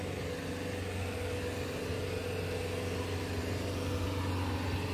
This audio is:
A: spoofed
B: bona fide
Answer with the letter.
B